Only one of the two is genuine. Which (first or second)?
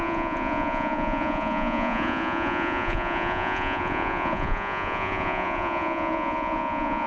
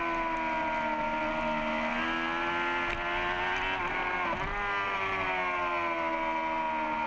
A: second